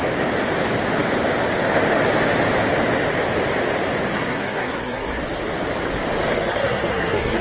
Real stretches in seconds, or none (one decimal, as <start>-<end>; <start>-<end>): 0.0-4.1; 5.2-6.3